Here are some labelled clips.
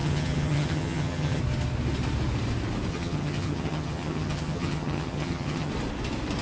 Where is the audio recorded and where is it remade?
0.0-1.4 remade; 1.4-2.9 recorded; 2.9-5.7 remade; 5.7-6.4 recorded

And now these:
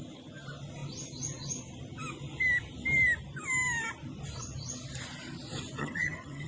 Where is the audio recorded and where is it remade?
0.0-5.8 recorded; 5.8-6.5 remade

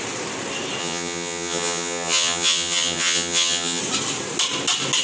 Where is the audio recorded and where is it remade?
0.0-0.8 recorded; 0.8-3.8 remade; 3.8-5.0 recorded

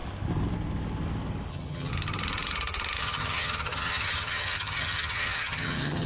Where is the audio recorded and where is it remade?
0.0-1.5 recorded; 1.5-1.9 remade; 1.9-3.0 recorded; 3.0-6.1 remade

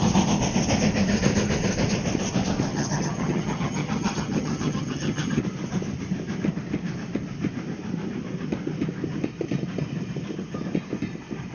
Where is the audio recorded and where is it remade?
0.0-2.7 recorded; 2.7-5.4 remade; 5.4-11.5 recorded

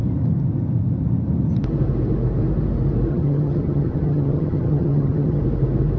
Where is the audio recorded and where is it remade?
0.0-3.1 recorded; 3.1-5.4 remade; 5.4-6.0 recorded